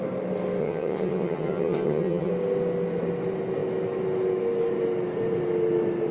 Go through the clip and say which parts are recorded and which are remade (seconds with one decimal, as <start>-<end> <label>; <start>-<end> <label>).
0.0-0.6 recorded; 0.6-2.3 remade; 2.3-6.1 recorded